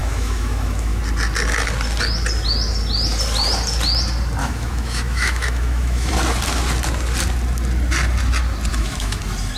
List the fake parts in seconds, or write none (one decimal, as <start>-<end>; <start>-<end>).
0.0-1.0; 4.4-6.1; 8.7-9.2